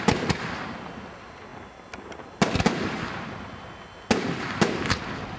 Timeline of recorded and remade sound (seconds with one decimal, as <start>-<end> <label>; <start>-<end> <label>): 0.0-5.4 recorded